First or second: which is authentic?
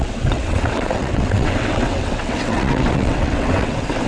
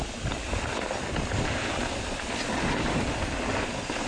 second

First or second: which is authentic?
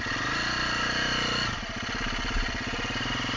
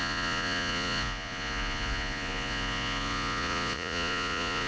first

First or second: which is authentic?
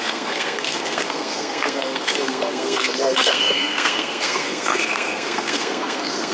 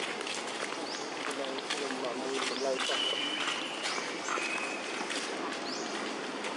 second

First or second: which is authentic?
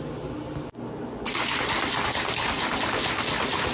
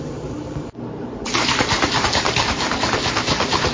first